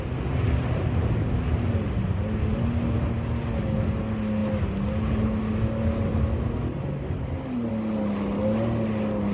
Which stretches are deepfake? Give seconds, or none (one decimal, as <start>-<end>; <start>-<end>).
none